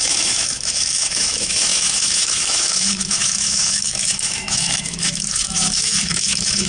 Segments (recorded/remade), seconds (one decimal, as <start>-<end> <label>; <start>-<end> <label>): 0.0-6.7 remade